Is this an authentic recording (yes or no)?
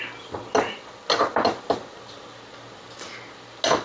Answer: yes